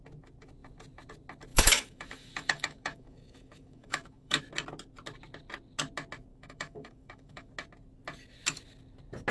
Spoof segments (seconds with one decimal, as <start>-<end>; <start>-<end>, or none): 1.5-4.4; 6.3-7.5